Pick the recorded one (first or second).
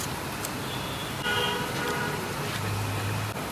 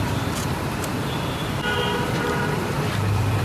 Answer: first